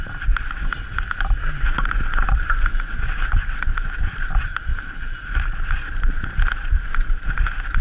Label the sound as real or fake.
real